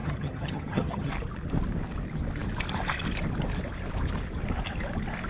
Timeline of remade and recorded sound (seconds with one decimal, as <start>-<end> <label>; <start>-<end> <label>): 0.0-1.1 remade; 1.1-5.3 recorded